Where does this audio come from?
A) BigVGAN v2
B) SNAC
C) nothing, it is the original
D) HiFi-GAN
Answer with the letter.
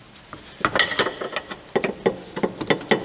C